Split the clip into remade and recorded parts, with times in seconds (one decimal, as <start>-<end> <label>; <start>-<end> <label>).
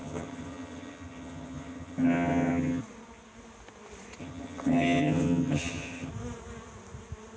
0.0-2.8 remade; 2.8-4.2 recorded; 4.2-6.1 remade; 6.1-7.4 recorded